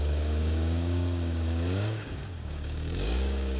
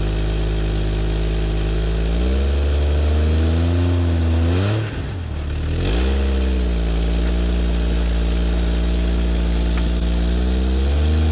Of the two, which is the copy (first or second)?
first